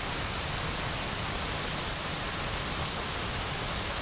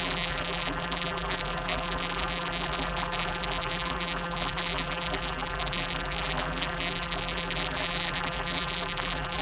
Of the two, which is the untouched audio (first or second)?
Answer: first